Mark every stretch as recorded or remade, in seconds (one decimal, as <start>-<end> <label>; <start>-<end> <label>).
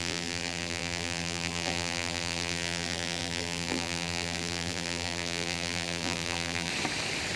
0.0-6.7 remade; 6.7-7.4 recorded